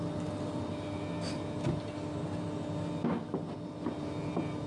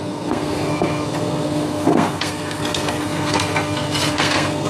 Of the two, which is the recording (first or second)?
first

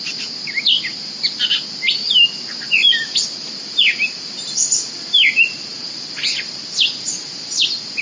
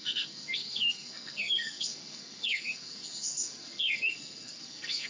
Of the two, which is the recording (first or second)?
first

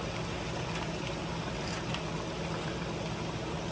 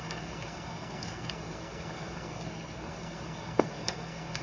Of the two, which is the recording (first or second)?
first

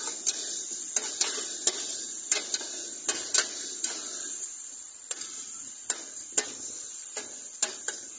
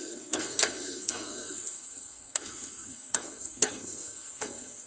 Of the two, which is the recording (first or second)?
first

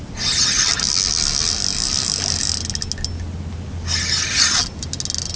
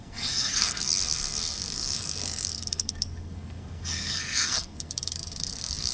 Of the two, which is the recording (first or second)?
first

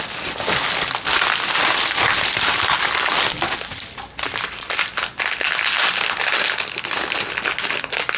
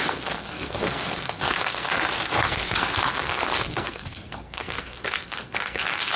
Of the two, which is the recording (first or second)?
first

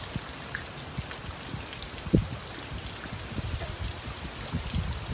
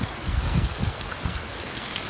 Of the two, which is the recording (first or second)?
first